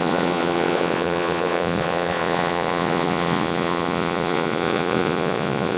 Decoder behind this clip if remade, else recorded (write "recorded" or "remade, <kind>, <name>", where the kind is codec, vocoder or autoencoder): remade, vocoder, Vocos